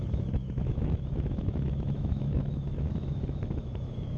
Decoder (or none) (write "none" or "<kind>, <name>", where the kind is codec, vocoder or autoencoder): autoencoder, DAC-VAE